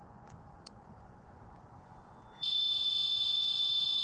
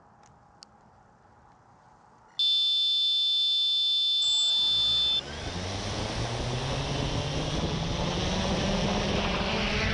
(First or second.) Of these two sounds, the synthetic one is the first